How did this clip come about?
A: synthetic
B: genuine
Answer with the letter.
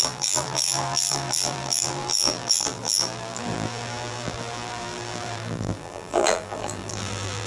A